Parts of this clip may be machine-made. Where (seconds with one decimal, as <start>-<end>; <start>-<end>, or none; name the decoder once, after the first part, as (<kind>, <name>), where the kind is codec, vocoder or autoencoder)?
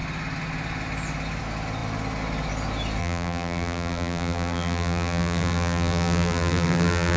3.0-7.2 (vocoder, BigVGAN v2)